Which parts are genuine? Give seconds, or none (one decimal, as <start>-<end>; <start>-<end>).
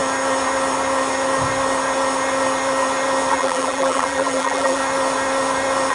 0.0-3.3; 4.8-5.9